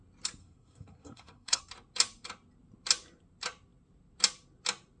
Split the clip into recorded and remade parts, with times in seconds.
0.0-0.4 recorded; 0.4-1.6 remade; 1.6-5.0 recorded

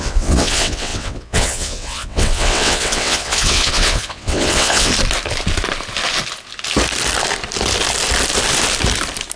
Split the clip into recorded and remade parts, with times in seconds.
0.0-4.9 remade; 4.9-9.4 recorded

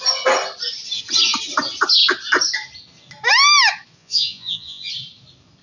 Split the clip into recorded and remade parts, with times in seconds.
0.0-4.0 recorded; 4.0-4.9 remade; 4.9-5.6 recorded